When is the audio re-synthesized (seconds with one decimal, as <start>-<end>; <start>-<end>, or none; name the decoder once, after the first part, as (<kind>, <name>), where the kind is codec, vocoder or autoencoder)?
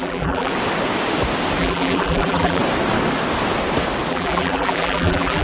0.0-0.5 (vocoder, BigVGAN v2); 1.6-2.6; 4.1-5.4